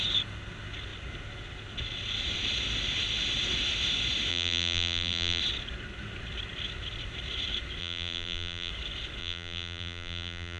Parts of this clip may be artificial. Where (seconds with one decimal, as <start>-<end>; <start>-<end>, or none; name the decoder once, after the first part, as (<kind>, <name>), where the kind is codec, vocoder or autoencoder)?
4.3-5.4 (vocoder, BigVGAN v2); 7.8-8.7; 9.2-10.6